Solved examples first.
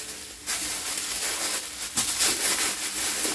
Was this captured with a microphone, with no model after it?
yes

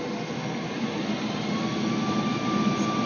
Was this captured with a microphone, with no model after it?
yes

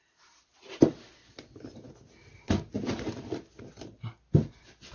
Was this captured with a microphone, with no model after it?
yes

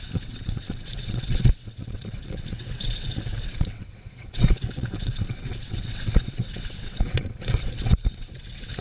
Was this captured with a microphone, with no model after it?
no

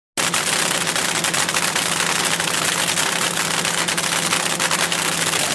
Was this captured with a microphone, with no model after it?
yes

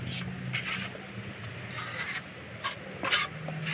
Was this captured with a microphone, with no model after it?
yes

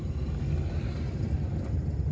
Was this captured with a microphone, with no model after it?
yes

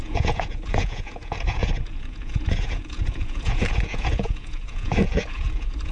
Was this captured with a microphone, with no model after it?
no